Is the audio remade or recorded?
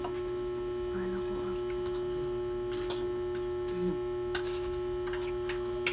recorded